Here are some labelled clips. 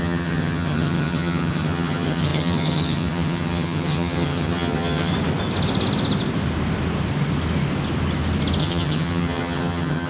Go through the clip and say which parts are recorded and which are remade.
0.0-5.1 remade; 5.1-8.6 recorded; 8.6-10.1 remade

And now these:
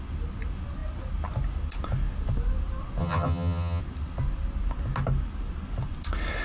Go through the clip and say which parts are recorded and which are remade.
0.0-3.0 recorded; 3.0-3.8 remade; 3.8-6.4 recorded

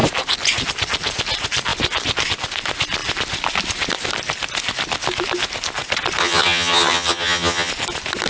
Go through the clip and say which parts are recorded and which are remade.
0.0-6.2 recorded; 6.2-7.7 remade; 7.7-8.3 recorded

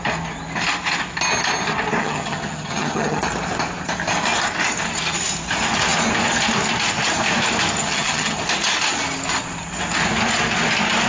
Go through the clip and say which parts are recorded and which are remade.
0.0-2.0 recorded; 2.0-3.2 remade; 3.2-7.8 recorded; 7.8-8.4 remade; 8.4-11.1 recorded